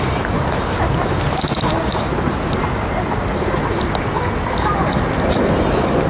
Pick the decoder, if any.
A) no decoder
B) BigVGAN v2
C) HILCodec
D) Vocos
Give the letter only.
A